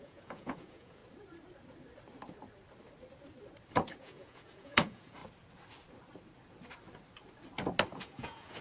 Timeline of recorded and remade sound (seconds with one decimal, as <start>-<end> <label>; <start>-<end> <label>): 0.0-1.0 remade; 1.0-4.0 recorded; 4.0-5.2 remade; 5.2-7.9 recorded; 7.9-8.6 remade